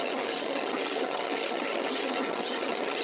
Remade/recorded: remade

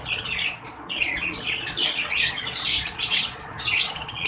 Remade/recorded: remade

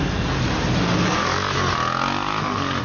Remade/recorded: recorded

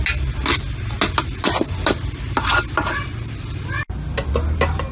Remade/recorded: recorded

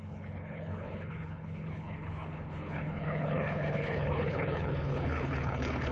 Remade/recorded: remade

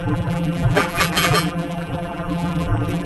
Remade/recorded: remade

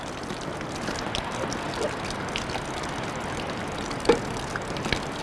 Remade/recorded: recorded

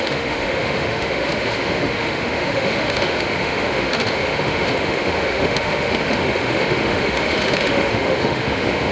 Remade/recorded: remade